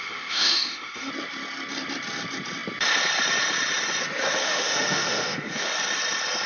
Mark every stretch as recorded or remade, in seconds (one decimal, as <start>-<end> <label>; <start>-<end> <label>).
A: 0.0-1.1 remade; 1.1-4.4 recorded; 4.4-5.7 remade; 5.7-6.5 recorded